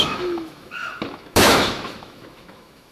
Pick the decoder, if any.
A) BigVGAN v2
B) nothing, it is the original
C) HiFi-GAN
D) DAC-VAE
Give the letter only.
D